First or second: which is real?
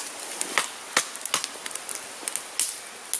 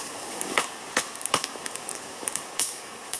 first